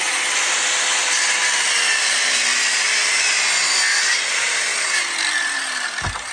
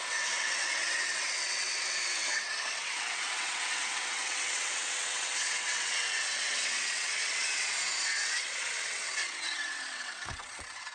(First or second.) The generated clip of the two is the second